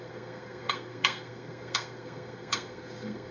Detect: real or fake fake